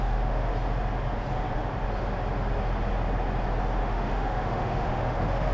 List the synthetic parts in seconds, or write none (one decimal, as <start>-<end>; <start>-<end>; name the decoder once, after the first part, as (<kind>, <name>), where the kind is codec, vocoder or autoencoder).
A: 0.0-0.5 (autoencoder, DAC-VAE); 3.8-5.5